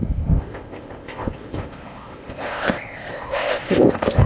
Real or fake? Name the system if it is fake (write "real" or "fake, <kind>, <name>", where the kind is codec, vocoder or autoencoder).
fake, codec, ZipCodec